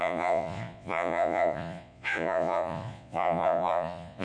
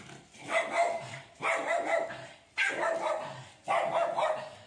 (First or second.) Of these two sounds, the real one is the second